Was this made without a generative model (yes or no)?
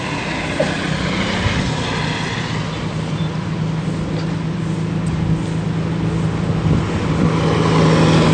yes